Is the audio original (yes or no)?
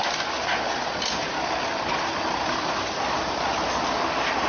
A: yes